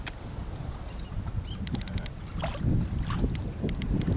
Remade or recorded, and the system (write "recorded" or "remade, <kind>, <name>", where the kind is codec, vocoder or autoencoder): recorded